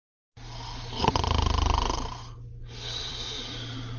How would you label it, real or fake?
real